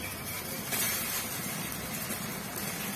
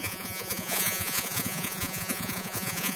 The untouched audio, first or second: first